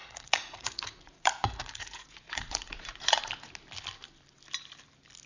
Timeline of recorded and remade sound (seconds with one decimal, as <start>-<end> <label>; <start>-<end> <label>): 0.0-3.2 remade; 3.2-5.3 recorded